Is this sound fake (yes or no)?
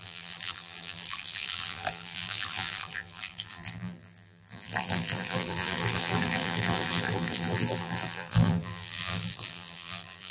yes